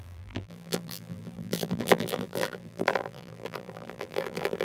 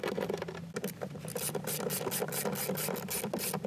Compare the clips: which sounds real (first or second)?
second